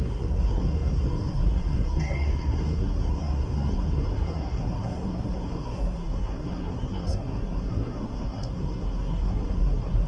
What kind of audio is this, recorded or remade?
remade